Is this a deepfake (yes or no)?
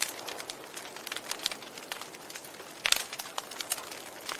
no